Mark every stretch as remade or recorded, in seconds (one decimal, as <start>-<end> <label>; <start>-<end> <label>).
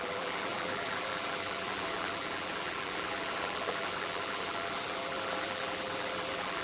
0.0-6.6 remade